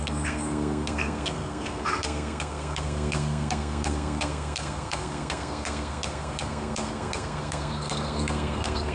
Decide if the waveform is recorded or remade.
remade